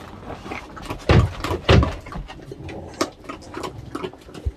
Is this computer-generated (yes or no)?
no